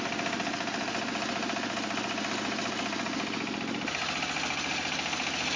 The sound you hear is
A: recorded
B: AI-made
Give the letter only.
A